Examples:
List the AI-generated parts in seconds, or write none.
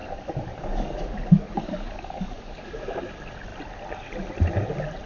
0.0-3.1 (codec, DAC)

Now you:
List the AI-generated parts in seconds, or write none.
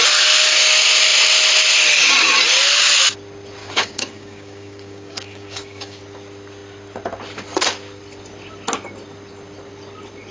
3.6-6.0 (codec, DAC)